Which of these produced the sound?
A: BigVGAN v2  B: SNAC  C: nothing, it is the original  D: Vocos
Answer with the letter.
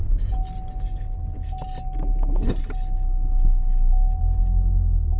C